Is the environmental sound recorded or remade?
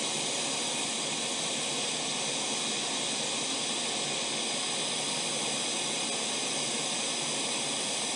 recorded